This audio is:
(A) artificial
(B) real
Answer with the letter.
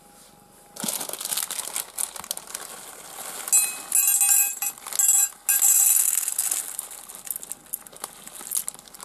B